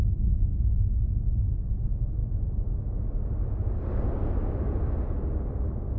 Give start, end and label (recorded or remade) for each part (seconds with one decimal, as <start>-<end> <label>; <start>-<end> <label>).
0.0-0.5 recorded; 0.5-1.6 remade; 1.6-6.0 recorded